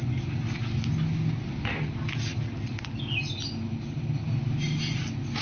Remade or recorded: recorded